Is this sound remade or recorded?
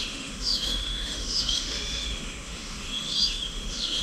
remade